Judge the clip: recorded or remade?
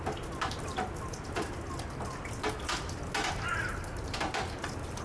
recorded